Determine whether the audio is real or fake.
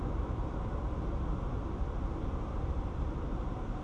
real